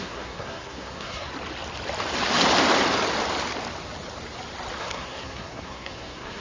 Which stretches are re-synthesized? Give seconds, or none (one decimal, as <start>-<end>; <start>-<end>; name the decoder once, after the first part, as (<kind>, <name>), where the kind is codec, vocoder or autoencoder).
0.0-1.3 (codec, SNAC); 4.8-6.4

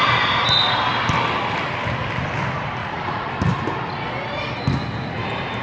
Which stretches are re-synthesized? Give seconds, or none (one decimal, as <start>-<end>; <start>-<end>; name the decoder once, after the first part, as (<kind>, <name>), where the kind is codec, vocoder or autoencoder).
2.8-3.3 (vocoder, Vocos)

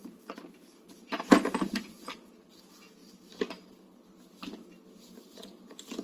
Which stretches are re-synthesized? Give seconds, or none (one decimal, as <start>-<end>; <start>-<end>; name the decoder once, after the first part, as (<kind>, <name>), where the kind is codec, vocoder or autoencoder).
0.0-2.6 (vocoder, BigVGAN v2)

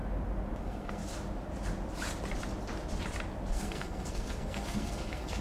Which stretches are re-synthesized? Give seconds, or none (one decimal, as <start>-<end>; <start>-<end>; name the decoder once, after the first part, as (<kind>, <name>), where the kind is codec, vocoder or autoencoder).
0.6-1.0 (codec, SNAC); 3.5-5.4

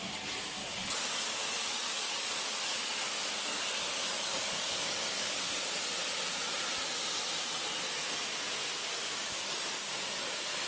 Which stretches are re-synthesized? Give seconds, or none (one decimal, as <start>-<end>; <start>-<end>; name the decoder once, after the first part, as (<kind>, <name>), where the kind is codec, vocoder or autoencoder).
0.6-5.6 (codec, DAC); 9.0-9.6

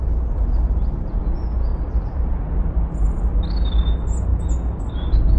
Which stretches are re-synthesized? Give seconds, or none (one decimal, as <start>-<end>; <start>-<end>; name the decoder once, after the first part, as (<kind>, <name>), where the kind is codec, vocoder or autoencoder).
none

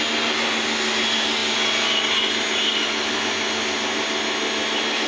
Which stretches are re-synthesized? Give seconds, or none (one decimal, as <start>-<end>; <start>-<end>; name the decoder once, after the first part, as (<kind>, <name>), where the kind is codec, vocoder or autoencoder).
none